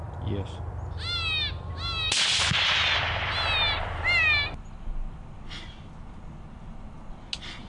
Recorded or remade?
recorded